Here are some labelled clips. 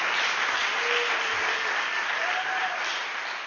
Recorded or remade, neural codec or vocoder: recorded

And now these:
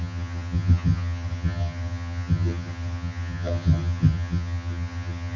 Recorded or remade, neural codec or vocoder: remade, vocoder, HiFi-GAN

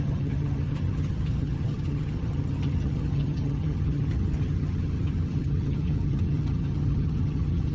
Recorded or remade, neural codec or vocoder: remade, vocoder, HiFi-GAN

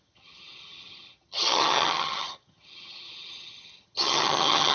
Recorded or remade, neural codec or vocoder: remade, vocoder, HiFi-GAN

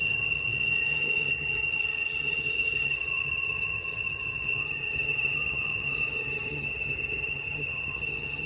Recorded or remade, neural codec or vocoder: remade, vocoder, HiFi-GAN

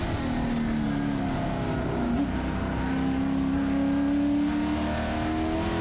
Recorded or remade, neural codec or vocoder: recorded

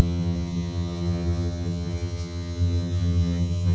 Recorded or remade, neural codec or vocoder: remade, vocoder, HiFi-GAN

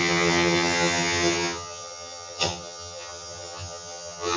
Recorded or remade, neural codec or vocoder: remade, vocoder, HiFi-GAN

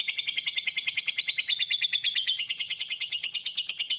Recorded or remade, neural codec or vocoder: remade, vocoder, HiFi-GAN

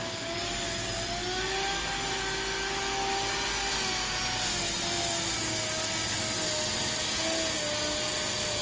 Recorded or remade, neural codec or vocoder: recorded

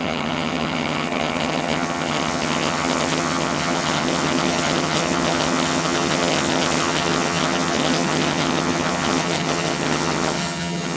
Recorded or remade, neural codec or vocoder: remade, vocoder, HiFi-GAN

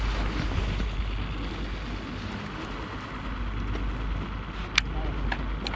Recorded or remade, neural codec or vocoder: recorded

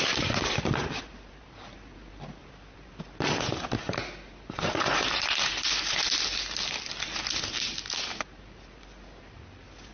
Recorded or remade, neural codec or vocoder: recorded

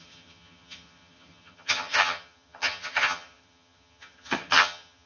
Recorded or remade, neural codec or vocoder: remade, vocoder, HiFi-GAN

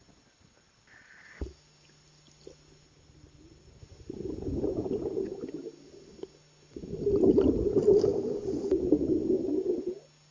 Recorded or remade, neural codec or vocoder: recorded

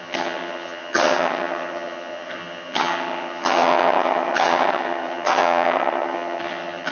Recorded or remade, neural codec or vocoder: remade, vocoder, HiFi-GAN